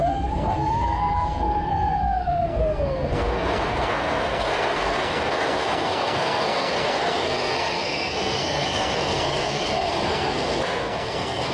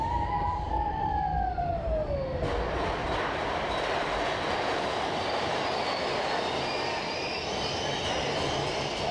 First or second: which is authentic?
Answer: second